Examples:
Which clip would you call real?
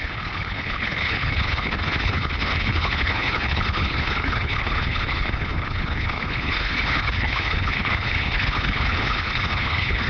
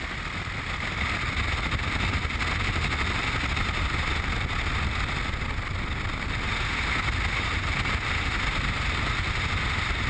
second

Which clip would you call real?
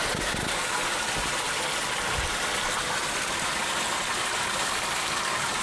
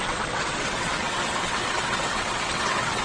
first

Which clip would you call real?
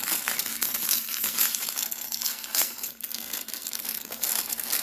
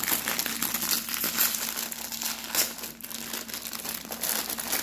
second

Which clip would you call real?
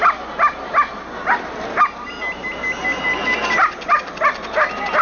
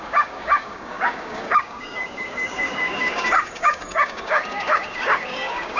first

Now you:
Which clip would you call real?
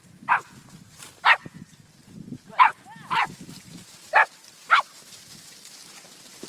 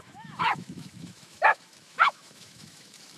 first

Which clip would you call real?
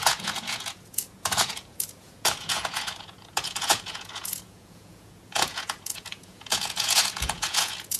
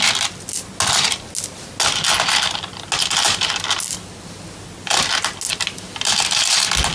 second